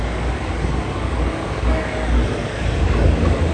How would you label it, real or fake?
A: fake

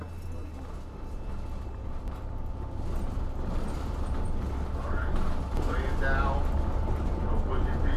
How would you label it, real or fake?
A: real